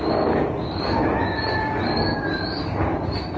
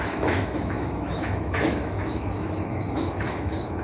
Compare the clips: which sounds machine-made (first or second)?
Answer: second